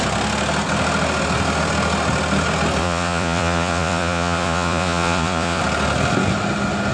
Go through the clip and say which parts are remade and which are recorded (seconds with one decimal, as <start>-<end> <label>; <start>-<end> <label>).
0.0-2.8 recorded; 2.8-5.6 remade; 5.6-6.9 recorded